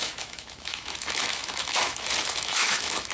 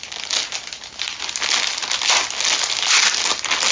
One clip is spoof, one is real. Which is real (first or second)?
second